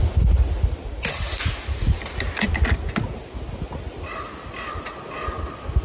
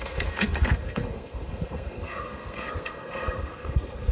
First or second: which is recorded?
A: first